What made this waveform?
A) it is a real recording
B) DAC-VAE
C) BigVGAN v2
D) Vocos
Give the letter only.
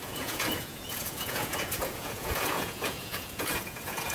D